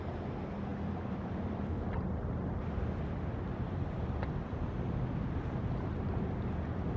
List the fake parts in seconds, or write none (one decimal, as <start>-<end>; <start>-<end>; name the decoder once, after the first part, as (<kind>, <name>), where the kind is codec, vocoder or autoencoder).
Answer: none